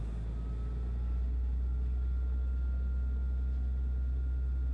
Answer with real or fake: real